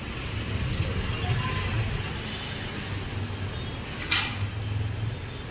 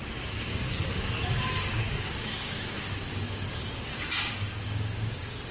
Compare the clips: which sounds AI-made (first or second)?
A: second